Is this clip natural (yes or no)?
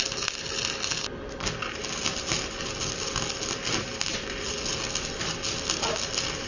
yes